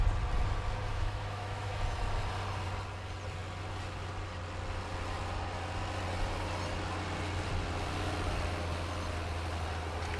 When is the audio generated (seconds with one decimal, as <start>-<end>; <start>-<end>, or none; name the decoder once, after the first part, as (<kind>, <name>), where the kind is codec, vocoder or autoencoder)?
0.9-1.7 (autoencoder, DAC-VAE)